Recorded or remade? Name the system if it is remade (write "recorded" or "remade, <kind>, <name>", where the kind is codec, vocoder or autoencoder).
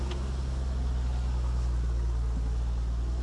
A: recorded